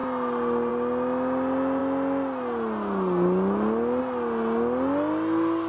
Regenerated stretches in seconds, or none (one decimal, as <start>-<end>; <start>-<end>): none